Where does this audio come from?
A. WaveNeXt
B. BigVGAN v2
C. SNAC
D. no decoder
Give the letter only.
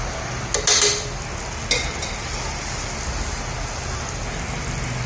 D